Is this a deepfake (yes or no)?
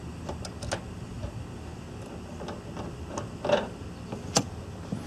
no